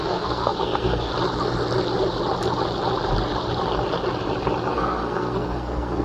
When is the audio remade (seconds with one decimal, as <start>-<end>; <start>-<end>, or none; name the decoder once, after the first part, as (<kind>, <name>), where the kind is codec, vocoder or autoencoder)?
0.0-1.1 (codec, SNAC); 4.7-6.0